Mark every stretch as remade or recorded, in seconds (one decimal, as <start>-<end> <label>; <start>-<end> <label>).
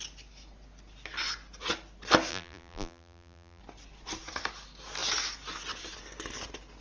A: 0.0-2.3 recorded; 2.3-3.6 remade; 3.6-6.8 recorded